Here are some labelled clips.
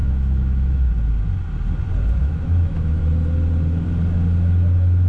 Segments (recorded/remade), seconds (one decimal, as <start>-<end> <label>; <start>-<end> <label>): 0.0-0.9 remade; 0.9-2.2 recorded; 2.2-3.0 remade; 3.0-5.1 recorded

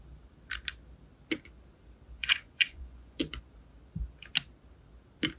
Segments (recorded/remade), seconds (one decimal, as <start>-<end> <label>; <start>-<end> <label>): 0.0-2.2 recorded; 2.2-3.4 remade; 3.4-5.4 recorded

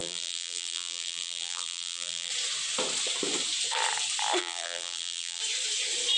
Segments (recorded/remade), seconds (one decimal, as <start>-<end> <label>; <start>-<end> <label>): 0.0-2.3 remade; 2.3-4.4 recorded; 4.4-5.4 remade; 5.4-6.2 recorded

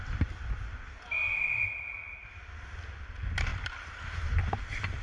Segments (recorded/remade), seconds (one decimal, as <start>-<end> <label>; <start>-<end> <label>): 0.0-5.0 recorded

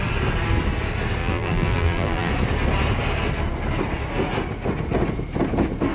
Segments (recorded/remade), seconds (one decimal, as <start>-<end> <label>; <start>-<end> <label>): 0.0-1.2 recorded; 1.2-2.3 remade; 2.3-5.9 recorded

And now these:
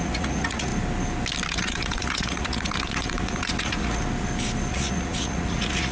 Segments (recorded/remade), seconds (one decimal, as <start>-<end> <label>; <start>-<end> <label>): 0.0-0.7 remade; 0.7-1.5 recorded; 1.5-4.0 remade; 4.0-4.7 recorded; 4.7-5.9 remade

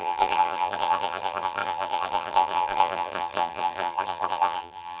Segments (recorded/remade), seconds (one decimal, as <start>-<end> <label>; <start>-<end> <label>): 0.0-5.0 remade

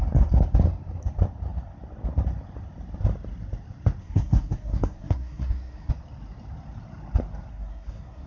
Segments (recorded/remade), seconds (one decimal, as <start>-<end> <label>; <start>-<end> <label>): 0.0-4.0 recorded; 4.0-5.9 remade; 5.9-7.5 recorded; 7.5-8.3 remade